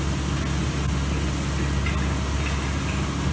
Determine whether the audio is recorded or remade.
recorded